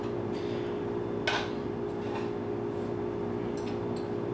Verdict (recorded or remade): recorded